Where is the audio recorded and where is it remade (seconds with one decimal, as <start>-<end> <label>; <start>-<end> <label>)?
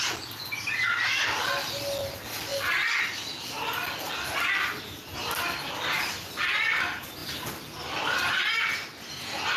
0.0-9.6 recorded